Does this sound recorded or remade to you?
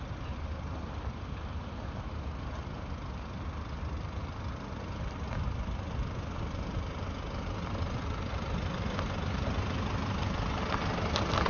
recorded